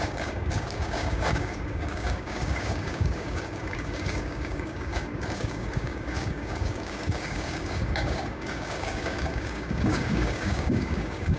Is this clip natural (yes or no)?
no